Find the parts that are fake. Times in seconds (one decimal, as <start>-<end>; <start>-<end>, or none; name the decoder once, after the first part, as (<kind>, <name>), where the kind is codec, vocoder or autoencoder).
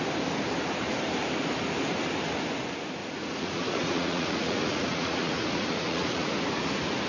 3.0-6.3 (vocoder, Vocos)